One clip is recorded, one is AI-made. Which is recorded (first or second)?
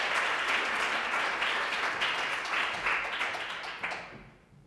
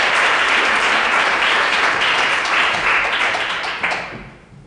first